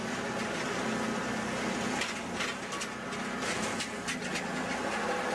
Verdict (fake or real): real